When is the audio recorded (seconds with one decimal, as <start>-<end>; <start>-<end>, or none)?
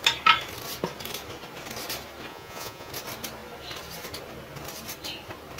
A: 0.0-2.3; 2.9-5.6